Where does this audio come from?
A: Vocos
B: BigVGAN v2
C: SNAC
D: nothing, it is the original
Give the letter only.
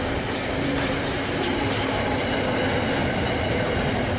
D